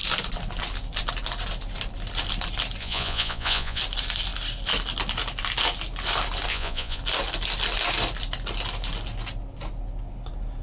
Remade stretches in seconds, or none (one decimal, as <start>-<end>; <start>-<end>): 2.8-3.8; 6.5-7.0